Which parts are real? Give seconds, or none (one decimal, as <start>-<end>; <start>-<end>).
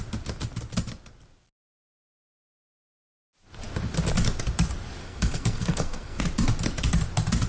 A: 0.0-5.0; 6.2-7.5